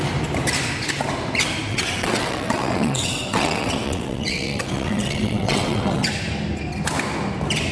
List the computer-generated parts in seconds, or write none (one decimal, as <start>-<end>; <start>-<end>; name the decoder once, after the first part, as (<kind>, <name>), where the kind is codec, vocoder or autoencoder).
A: 1.7-6.1 (vocoder, WaveNeXt)